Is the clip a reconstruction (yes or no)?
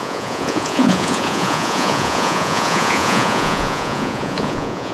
yes